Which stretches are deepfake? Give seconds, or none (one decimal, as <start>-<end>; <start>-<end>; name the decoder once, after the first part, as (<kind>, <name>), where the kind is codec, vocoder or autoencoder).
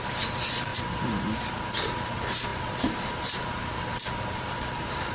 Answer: 0.0-0.7 (vocoder, BigVGAN v2); 1.6-5.1